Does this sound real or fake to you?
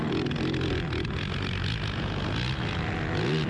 real